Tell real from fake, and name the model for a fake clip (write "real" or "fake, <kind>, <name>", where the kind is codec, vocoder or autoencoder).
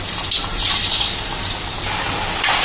real